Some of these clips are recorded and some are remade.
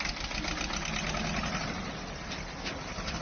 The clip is remade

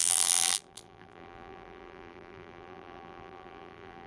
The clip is remade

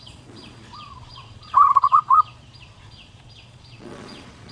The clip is remade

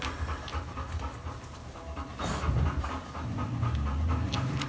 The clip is recorded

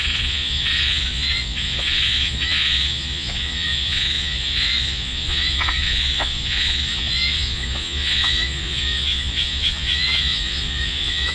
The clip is remade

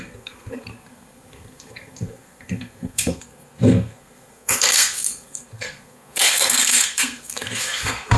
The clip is remade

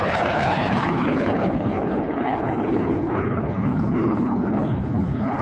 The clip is remade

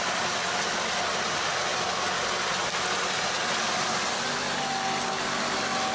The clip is recorded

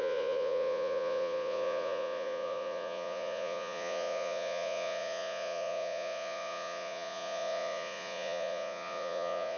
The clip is remade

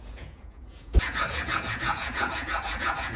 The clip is remade